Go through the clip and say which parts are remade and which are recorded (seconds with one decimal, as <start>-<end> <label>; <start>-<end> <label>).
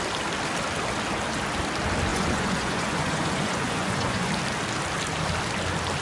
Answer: 0.0-2.1 recorded; 2.1-4.3 remade; 4.3-6.0 recorded